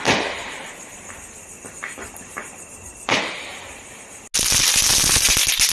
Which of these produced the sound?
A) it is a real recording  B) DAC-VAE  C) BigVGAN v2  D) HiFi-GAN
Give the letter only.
A